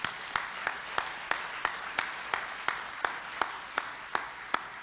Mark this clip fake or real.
real